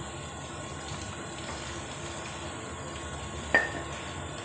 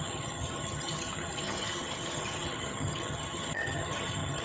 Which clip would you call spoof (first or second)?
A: second